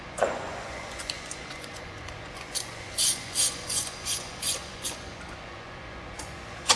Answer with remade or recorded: remade